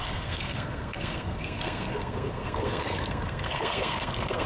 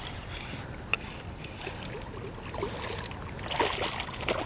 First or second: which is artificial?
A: first